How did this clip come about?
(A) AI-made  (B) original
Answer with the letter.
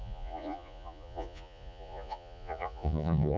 A